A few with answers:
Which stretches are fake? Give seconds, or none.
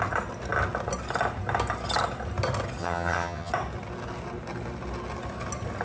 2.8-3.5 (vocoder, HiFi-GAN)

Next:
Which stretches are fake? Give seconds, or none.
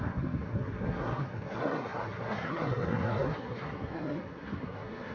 0.0-5.1 (codec, SNAC)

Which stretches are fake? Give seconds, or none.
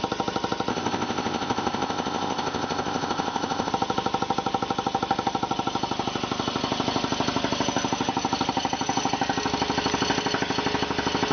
0.7-3.7 (codec, ZipCodec)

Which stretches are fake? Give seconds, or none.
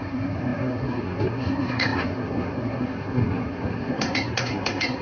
0.0-5.0 (codec, SNAC)